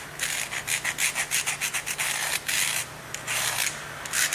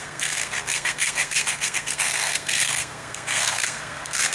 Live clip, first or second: first